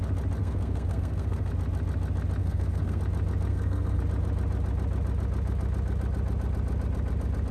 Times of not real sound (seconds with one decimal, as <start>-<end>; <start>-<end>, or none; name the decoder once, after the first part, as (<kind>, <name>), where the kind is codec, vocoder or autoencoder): 0.4-1.5 (codec, SNAC); 2.4-3.0; 3.5-4.0